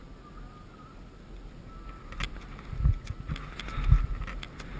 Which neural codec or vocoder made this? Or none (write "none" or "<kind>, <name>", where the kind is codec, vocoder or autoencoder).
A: none